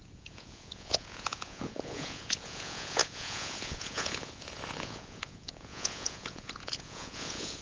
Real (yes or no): no